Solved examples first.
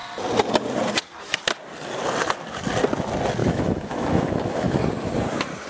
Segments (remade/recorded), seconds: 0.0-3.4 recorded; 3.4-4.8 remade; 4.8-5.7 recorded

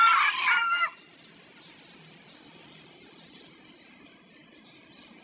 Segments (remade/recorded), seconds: 0.0-5.2 recorded

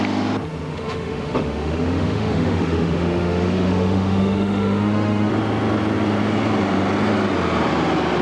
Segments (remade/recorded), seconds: 0.0-0.7 recorded; 0.7-5.3 remade; 5.3-8.2 recorded

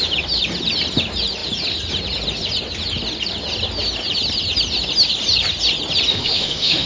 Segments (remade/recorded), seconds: 0.0-6.1 recorded; 6.1-6.9 remade

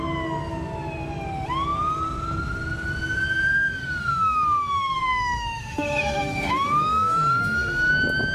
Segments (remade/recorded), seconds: 0.0-3.7 recorded; 3.7-7.9 remade; 7.9-8.3 recorded

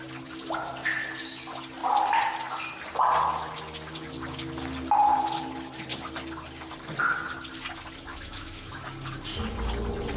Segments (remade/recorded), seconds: 0.0-8.1 recorded; 8.1-8.7 remade; 8.7-10.2 recorded

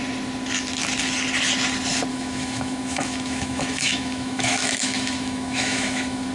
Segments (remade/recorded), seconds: 0.0-2.1 recorded; 2.1-6.3 remade